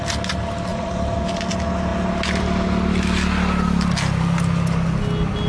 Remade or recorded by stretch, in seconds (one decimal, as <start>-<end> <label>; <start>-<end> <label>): 0.0-5.5 recorded